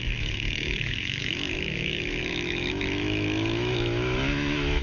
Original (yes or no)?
no